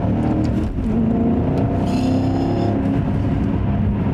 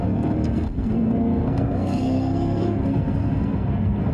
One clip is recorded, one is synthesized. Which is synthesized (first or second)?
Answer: second